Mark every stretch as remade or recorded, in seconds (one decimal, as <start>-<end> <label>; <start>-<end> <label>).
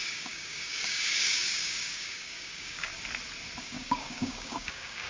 0.0-2.9 remade; 2.9-3.6 recorded; 3.6-5.1 remade